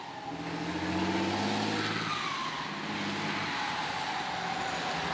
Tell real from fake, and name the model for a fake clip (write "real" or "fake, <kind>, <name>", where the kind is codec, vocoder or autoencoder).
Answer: real